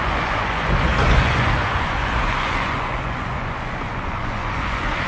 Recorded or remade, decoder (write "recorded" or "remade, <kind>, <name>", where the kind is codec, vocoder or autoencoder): remade, vocoder, Vocos